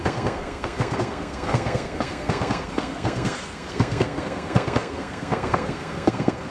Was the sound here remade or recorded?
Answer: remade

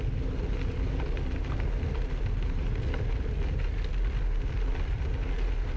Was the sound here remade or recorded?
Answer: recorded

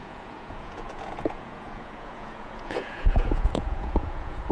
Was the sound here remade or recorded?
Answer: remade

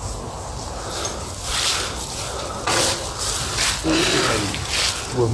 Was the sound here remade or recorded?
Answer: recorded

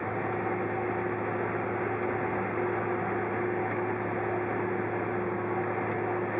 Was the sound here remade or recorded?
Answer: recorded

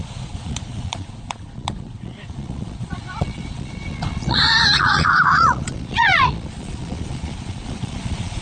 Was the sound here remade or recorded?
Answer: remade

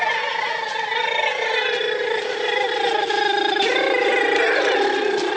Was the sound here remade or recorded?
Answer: recorded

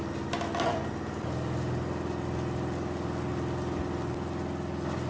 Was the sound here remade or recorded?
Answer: recorded